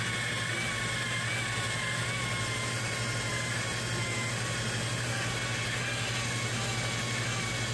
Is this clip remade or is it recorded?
recorded